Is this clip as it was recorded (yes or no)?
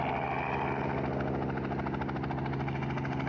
yes